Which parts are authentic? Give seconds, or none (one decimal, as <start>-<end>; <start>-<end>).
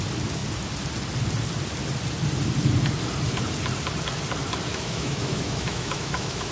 0.0-4.7